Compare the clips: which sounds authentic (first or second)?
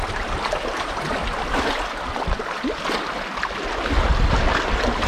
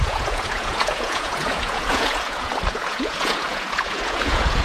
first